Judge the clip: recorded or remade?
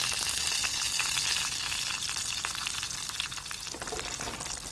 recorded